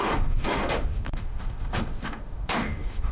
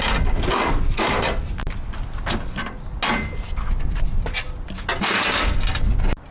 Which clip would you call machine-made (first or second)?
first